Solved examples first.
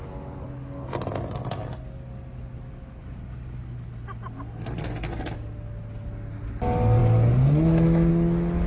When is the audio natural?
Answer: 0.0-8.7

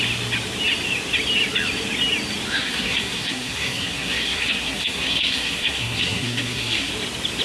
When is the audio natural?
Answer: 0.0-2.5; 6.9-7.4